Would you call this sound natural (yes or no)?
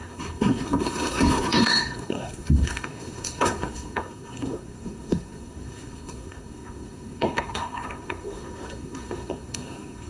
no